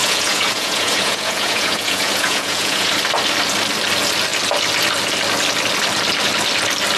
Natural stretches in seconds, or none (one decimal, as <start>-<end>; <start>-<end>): 2.9-7.0